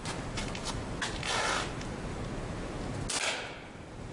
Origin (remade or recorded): recorded